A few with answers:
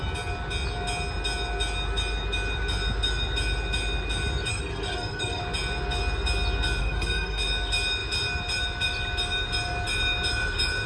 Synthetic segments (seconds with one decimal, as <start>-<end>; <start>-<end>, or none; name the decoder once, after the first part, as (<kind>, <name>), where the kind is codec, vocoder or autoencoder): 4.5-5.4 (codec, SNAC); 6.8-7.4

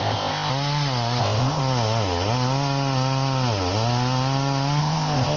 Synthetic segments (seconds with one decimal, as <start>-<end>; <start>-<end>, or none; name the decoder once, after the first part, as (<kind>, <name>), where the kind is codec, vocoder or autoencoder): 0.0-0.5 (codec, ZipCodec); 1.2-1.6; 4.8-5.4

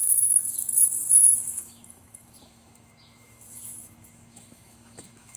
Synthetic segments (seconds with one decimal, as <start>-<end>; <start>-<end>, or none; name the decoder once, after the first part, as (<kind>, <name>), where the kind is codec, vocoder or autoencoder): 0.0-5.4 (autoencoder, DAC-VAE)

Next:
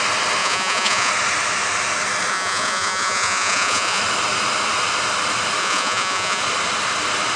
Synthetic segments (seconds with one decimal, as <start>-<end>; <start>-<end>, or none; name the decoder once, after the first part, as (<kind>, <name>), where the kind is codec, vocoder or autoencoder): 0.4-1.1 (vocoder, Vocos); 2.3-4.0; 5.6-6.4